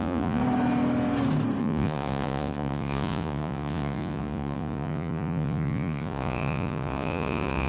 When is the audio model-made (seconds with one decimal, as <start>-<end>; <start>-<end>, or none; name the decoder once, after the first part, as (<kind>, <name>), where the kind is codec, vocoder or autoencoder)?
0.0-0.4 (vocoder, Vocos); 1.6-7.7

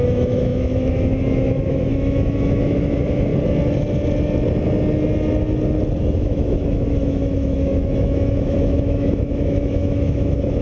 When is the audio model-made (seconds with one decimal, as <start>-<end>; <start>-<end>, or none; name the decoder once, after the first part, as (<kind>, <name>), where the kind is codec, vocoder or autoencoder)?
0.0-3.3 (autoencoder, DAC-VAE); 6.0-10.6

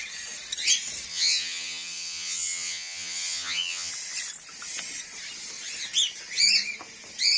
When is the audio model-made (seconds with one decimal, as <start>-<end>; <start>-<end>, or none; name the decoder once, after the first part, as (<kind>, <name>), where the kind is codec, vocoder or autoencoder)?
1.1-3.9 (vocoder, HiFi-GAN)

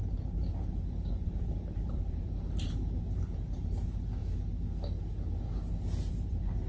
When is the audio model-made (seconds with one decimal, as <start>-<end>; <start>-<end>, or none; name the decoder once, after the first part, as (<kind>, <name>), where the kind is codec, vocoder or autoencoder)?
0.0-4.2 (vocoder, BigVGAN v2); 6.1-6.7

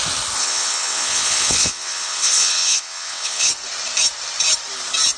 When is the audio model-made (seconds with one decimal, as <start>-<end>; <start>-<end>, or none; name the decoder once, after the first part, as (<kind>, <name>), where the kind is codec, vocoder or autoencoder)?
0.4-3.5 (vocoder, WaveNeXt)